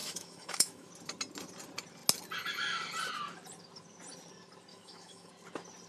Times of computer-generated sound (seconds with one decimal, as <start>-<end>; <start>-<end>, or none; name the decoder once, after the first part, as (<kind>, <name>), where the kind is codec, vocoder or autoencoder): 0.0-0.9 (autoencoder, DAC-VAE); 4.7-5.3

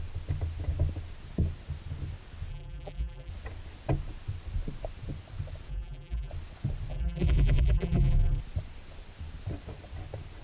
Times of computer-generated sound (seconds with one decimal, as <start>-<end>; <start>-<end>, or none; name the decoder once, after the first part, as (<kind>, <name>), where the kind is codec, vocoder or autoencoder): 2.5-3.3 (vocoder, BigVGAN v2); 5.7-6.3; 6.9-8.4

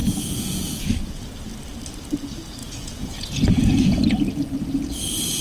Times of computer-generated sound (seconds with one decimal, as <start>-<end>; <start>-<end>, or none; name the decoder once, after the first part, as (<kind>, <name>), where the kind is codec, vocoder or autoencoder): 0.0-0.8 (vocoder, Vocos); 2.6-4.0

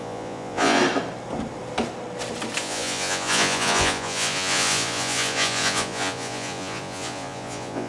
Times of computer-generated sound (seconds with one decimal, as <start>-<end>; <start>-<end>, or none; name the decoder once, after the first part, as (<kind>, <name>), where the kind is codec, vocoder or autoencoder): 0.0-0.8 (vocoder, Vocos); 2.6-7.9

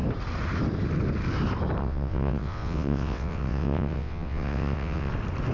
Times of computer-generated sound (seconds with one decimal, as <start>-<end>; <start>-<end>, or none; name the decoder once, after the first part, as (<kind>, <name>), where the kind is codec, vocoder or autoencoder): 1.8-5.1 (vocoder, WaveNeXt)

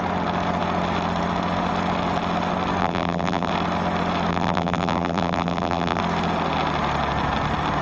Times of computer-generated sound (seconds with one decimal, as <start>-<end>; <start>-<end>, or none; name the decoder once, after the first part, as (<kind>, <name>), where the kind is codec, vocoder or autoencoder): 2.8-3.5 (vocoder, BigVGAN v2); 4.3-6.0

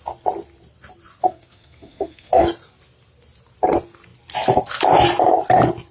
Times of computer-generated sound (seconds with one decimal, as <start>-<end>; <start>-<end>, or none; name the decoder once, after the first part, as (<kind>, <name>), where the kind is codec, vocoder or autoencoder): 1.2-2.4 (codec, SNAC)

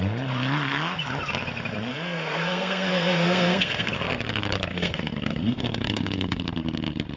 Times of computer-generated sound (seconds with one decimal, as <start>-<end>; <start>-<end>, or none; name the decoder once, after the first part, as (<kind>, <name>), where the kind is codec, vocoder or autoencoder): 1.9-3.9 (codec, SNAC); 4.7-6.4